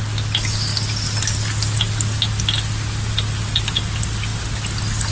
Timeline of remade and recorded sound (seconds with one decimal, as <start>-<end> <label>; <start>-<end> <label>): 0.0-5.1 recorded